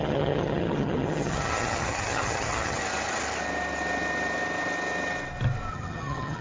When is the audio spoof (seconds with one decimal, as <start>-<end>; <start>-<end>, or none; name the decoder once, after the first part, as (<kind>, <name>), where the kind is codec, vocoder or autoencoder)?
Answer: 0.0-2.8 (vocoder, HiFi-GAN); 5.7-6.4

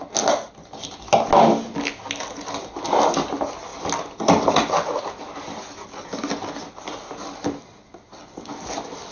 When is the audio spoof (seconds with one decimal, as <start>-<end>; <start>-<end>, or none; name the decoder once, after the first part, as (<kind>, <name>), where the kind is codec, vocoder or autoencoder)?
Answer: none

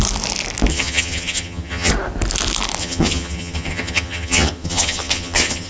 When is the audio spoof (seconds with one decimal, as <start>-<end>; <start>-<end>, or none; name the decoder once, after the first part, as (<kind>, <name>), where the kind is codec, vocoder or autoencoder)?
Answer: 0.7-1.9 (vocoder, HiFi-GAN); 2.8-5.7

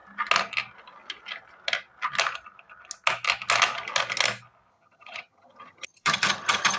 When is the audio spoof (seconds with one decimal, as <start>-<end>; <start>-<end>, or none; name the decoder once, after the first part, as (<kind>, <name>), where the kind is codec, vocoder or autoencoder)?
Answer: 4.7-6.8 (vocoder, HiFi-GAN)

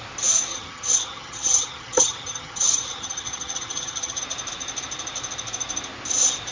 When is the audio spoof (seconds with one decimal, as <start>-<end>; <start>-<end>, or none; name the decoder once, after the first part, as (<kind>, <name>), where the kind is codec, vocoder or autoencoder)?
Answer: 0.5-4.2 (vocoder, HiFi-GAN)

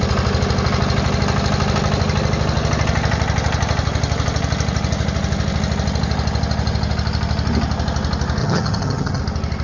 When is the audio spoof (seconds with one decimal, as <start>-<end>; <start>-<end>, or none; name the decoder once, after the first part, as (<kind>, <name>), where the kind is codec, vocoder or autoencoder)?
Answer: 8.4-9.2 (vocoder, HiFi-GAN)

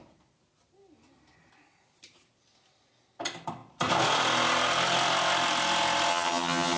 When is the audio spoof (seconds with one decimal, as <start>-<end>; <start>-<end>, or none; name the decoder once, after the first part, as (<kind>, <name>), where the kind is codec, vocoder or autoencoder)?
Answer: 6.1-6.8 (vocoder, HiFi-GAN)

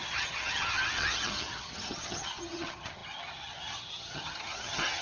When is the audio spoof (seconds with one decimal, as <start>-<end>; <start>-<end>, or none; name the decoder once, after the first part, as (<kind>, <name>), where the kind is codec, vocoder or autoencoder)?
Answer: 0.0-5.0 (vocoder, HiFi-GAN)